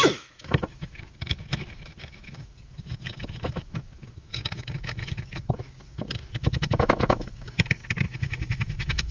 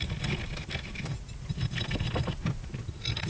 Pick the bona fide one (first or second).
second